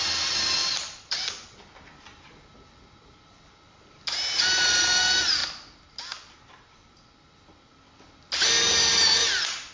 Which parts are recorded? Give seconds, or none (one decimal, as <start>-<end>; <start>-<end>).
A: 0.0-0.6; 1.3-9.7